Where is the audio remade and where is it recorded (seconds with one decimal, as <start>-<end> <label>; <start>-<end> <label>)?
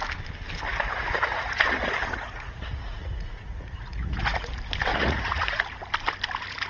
0.0-0.7 recorded; 0.7-4.5 remade; 4.5-4.9 recorded; 4.9-5.6 remade; 5.6-6.7 recorded